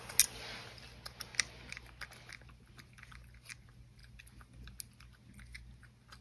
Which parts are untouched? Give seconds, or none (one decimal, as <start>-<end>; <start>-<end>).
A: 0.0-6.2